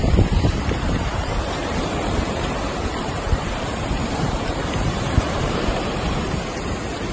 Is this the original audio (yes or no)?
no